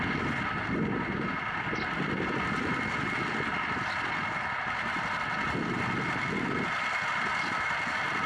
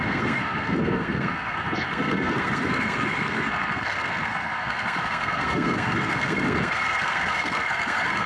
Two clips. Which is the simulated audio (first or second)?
second